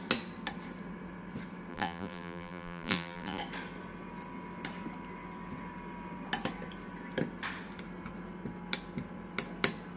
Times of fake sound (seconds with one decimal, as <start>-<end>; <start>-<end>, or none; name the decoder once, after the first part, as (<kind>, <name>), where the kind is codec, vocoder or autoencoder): 1.7-3.4 (vocoder, BigVGAN v2)